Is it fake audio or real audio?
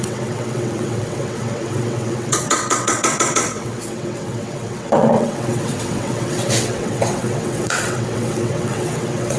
fake